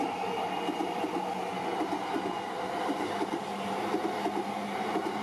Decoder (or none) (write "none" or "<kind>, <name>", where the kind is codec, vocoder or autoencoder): none